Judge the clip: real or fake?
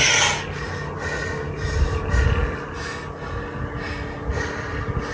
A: real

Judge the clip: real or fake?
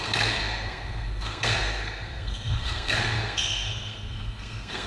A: fake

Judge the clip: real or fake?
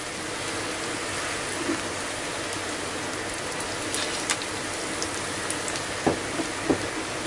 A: real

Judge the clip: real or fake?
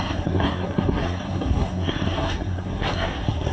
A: fake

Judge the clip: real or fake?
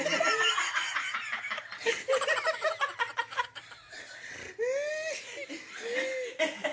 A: real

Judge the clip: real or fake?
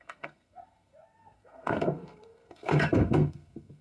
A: fake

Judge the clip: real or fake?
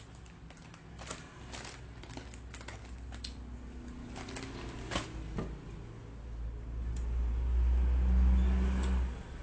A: real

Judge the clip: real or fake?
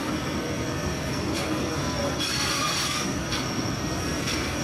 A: fake